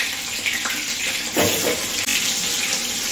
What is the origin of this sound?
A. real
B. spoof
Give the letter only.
A